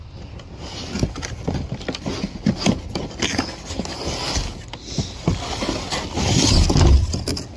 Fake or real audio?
real